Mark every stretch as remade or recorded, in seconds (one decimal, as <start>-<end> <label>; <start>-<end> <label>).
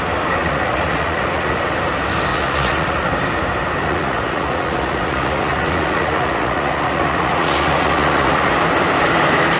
0.0-0.4 recorded; 0.4-1.6 remade; 1.6-2.3 recorded; 2.3-3.1 remade; 3.1-3.8 recorded; 3.8-8.5 remade; 8.5-9.6 recorded